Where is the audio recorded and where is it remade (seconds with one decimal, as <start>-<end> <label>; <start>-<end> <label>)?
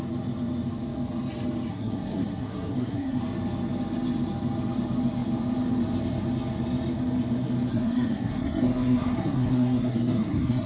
0.0-1.7 recorded; 1.7-3.2 remade; 3.2-7.7 recorded; 7.7-10.7 remade